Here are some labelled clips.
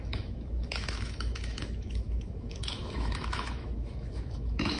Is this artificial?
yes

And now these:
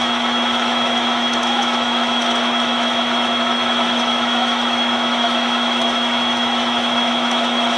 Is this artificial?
yes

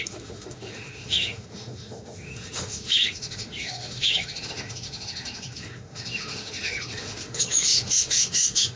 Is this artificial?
yes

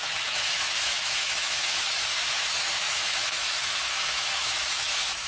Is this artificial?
yes